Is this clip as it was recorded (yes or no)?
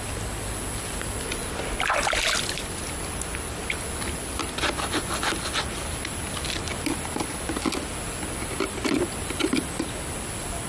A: yes